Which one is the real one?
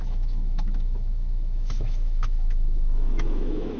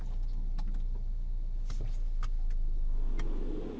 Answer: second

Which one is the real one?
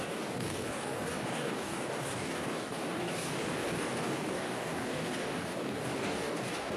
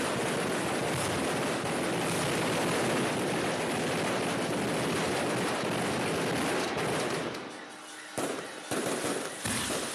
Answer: second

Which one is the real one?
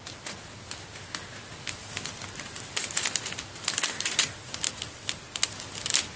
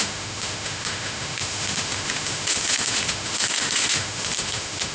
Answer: first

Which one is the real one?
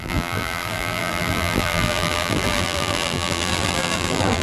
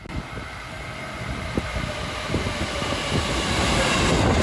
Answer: second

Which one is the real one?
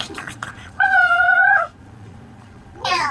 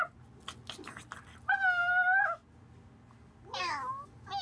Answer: second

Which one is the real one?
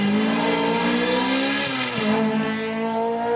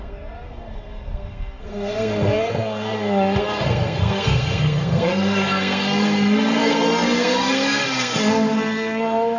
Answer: first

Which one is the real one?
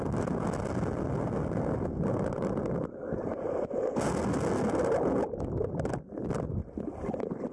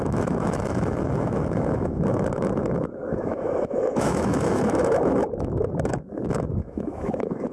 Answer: first